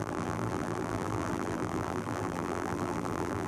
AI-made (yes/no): yes